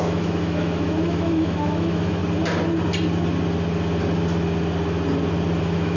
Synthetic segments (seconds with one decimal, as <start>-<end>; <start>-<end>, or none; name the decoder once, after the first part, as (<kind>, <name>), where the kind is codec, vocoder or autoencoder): 0.0-2.2 (autoencoder, DAC-VAE); 5.6-6.0